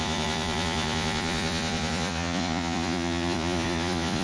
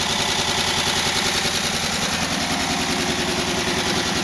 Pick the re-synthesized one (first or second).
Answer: first